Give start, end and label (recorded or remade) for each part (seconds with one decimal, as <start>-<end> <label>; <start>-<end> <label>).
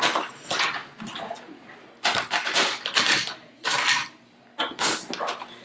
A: 0.0-5.6 recorded